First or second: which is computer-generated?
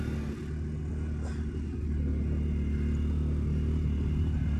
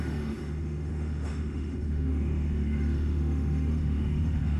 second